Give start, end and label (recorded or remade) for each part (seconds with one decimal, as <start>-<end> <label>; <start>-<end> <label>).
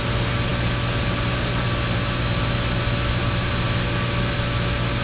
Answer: 0.0-5.0 recorded